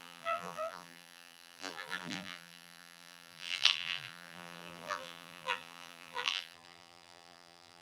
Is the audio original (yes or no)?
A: no